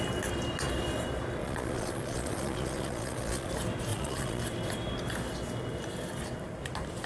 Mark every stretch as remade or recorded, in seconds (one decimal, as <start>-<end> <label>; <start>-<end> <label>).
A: 0.0-1.4 recorded; 1.4-3.5 remade; 3.5-3.9 recorded; 3.9-4.4 remade; 4.4-7.1 recorded